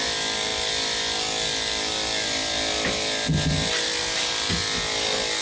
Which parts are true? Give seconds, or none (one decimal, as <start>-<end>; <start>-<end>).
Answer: 0.0-5.4